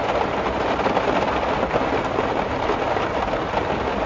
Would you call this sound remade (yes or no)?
no